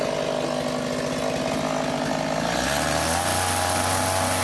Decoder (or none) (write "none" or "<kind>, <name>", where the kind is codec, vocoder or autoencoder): none